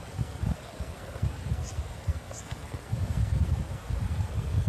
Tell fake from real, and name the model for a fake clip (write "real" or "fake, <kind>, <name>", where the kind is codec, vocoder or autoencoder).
fake, codec, SNAC